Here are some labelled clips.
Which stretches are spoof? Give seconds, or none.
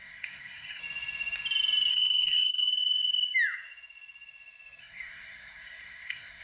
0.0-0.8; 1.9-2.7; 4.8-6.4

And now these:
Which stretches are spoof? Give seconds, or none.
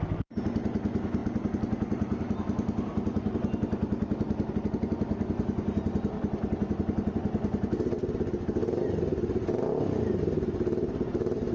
none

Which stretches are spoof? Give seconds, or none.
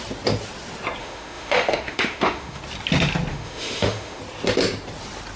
1.0-2.6; 3.3-4.2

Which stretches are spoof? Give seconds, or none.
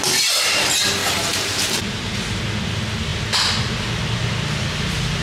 1.0-2.4